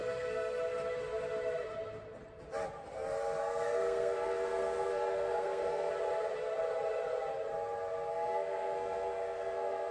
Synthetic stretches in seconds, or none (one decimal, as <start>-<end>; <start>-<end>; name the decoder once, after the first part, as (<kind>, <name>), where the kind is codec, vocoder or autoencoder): 0.0-0.6 (codec, SNAC); 3.4-5.9; 8.1-9.9